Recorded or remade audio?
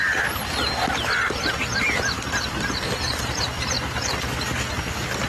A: recorded